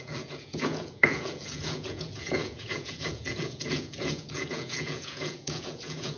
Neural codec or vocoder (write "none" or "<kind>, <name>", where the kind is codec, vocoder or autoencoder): vocoder, Vocos